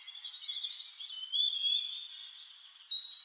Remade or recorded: recorded